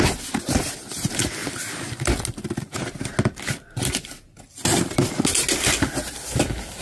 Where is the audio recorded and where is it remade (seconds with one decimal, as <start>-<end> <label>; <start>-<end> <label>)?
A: 0.0-6.8 recorded

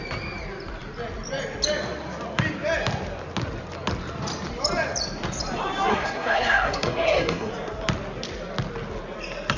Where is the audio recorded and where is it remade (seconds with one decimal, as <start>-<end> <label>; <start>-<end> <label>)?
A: 0.0-5.9 recorded; 5.9-7.5 remade; 7.5-9.6 recorded

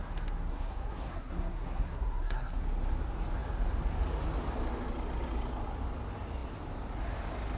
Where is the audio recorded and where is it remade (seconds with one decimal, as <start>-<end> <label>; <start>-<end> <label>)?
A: 0.0-0.5 recorded; 0.5-2.6 remade; 2.6-7.6 recorded

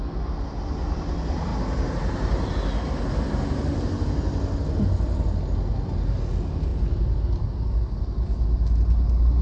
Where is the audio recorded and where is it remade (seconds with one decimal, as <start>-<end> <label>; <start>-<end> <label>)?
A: 0.0-9.4 recorded

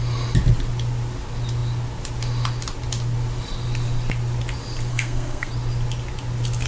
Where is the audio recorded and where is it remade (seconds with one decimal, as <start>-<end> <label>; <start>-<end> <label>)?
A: 0.0-4.9 recorded; 4.9-5.5 remade; 5.5-6.7 recorded